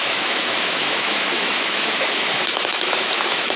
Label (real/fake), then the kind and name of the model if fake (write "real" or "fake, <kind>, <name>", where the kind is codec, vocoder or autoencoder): fake, autoencoder, DAC-VAE